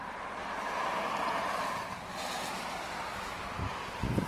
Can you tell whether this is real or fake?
real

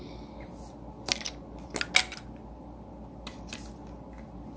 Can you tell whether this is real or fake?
real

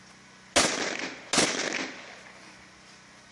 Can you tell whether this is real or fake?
real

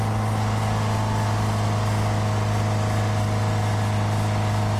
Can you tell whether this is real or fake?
real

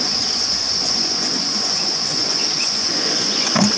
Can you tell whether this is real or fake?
fake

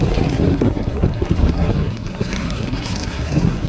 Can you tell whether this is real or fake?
fake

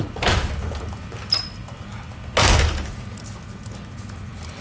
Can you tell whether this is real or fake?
real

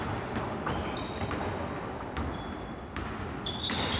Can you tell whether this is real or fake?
real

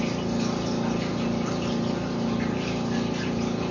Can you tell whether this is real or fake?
real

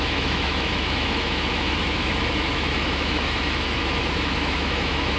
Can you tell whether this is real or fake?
fake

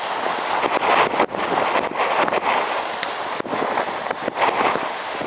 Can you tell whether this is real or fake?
real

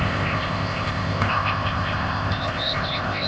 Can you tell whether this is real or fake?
fake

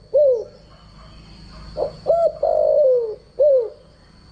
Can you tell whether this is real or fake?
real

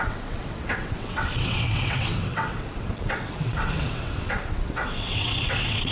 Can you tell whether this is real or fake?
fake